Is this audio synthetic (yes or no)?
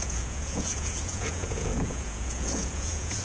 yes